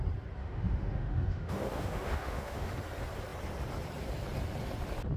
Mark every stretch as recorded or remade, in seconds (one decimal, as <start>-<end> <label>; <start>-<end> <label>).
0.0-0.4 recorded; 0.4-2.7 remade; 2.7-5.2 recorded